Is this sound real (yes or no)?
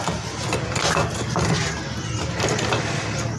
yes